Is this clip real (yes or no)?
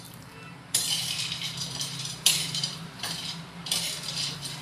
no